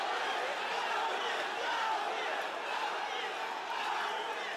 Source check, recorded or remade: recorded